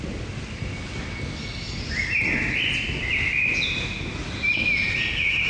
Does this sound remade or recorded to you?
recorded